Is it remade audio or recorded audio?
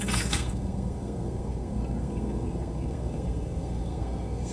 remade